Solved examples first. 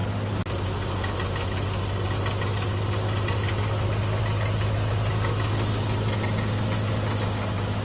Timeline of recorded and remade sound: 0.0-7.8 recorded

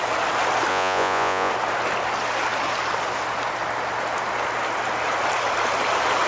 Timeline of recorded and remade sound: 0.0-0.7 recorded; 0.7-1.5 remade; 1.5-6.3 recorded